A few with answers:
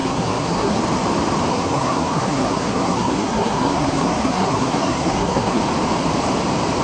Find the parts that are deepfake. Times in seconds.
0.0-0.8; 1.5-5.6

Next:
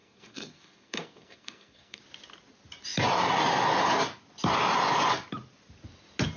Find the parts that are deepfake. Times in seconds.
0.0-2.0

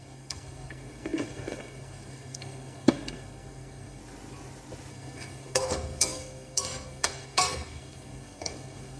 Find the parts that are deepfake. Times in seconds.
0.0-4.0; 4.9-9.0

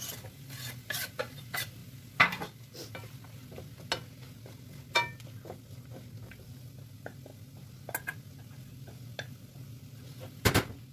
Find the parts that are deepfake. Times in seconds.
none

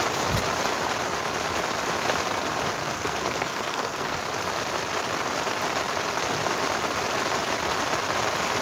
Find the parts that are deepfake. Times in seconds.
2.8-4.2